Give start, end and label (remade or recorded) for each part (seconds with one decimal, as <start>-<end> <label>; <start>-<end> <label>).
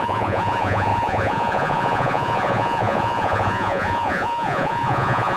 0.0-5.4 remade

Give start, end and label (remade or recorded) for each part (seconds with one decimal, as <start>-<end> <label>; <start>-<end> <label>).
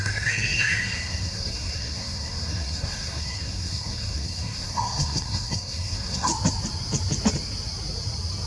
0.0-6.3 remade; 6.3-8.5 recorded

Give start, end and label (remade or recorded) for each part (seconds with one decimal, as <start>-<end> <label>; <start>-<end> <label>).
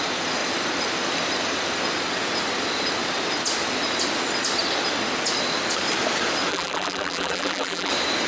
0.0-6.5 recorded; 6.5-7.9 remade; 7.9-8.3 recorded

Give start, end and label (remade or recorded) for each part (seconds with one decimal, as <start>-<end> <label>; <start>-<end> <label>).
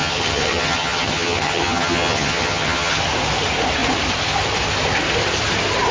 0.0-3.0 remade; 3.0-5.9 recorded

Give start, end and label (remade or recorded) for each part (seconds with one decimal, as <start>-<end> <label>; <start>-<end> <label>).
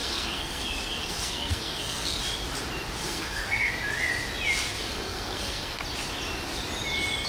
0.0-2.2 remade; 2.2-3.0 recorded; 3.0-3.7 remade; 3.7-4.7 recorded; 4.7-5.8 remade; 5.8-7.3 recorded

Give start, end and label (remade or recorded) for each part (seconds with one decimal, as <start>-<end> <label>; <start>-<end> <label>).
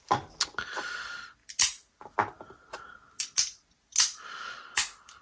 0.0-5.2 recorded